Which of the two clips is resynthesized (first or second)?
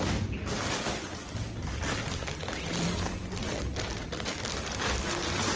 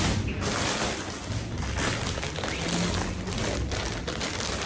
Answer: first